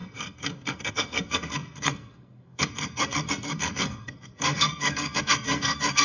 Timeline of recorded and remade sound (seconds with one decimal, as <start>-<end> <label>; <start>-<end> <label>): 0.0-6.0 remade